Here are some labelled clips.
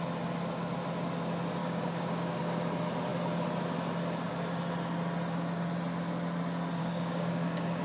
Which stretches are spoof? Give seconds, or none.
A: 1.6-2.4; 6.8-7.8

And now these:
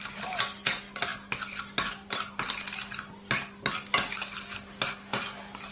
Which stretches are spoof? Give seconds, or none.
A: none

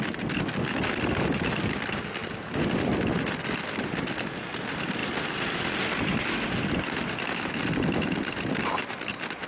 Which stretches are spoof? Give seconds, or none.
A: none

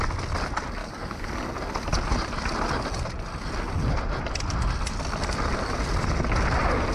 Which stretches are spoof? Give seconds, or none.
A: 0.8-1.4

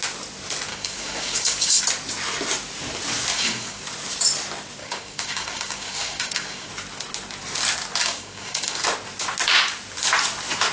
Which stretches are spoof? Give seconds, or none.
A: 0.7-1.8; 3.3-3.8; 4.8-6.7; 8.0-8.8

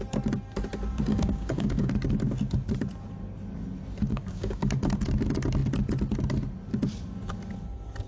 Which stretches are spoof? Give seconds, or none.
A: 1.1-1.9; 4.1-4.6

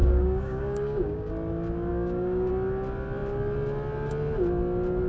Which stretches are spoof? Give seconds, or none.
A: 0.0-1.3; 1.9-2.5

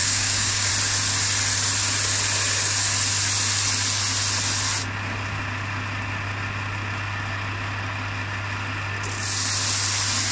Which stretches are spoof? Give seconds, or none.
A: 0.0-0.7